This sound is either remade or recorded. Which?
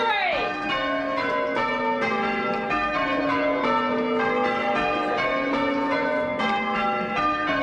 recorded